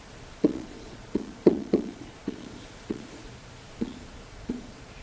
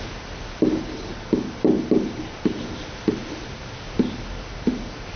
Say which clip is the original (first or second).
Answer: second